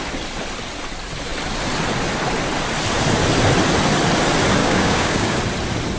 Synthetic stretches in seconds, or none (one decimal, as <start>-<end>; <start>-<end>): 4.6-5.4